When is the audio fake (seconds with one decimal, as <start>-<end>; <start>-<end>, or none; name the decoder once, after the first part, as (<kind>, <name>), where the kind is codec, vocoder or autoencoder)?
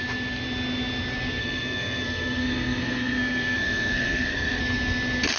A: 1.4-4.6 (codec, SNAC)